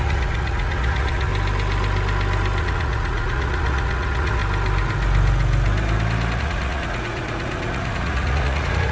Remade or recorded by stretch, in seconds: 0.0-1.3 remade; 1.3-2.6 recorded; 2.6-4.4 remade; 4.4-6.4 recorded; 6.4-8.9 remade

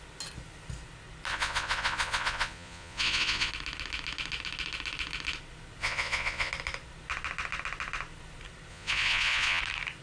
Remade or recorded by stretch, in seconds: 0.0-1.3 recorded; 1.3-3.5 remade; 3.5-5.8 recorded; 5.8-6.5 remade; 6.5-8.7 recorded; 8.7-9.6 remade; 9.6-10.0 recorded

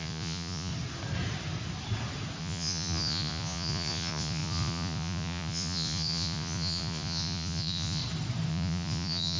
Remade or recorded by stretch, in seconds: 0.0-0.7 remade; 0.7-2.4 recorded; 2.4-8.0 remade; 8.0-8.5 recorded; 8.5-9.4 remade